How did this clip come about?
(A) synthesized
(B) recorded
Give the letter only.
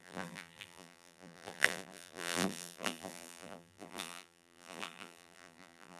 A